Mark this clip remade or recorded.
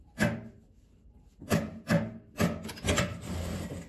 remade